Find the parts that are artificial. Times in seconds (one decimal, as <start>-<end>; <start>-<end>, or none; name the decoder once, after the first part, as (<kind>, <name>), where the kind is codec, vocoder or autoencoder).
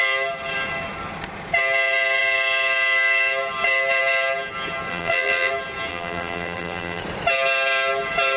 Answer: 4.9-5.5 (vocoder, BigVGAN v2); 5.9-7.0